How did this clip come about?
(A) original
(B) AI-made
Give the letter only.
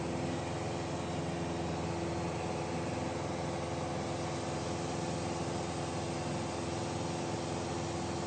A